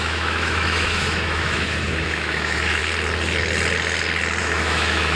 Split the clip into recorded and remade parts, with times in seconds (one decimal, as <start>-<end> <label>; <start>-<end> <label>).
0.0-2.8 remade; 2.8-4.4 recorded; 4.4-5.2 remade